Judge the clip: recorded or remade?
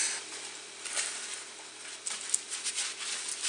recorded